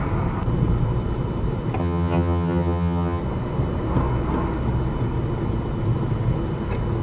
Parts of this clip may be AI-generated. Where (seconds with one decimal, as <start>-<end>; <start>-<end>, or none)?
1.8-3.2